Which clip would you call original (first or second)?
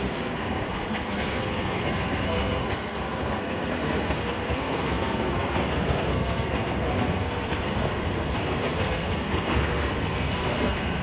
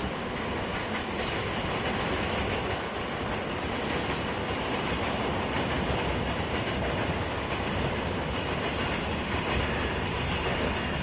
second